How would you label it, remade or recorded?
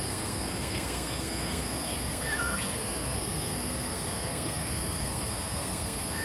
remade